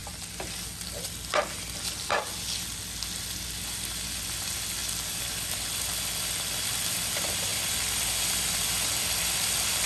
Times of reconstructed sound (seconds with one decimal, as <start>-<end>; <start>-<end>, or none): none